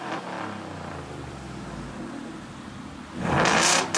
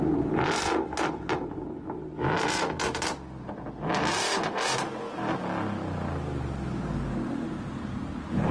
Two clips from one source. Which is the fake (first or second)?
first